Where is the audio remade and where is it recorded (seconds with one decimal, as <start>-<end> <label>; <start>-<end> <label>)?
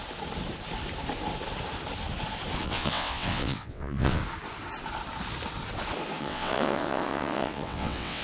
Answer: 0.0-2.6 recorded; 2.6-4.2 remade; 4.2-6.2 recorded; 6.2-8.2 remade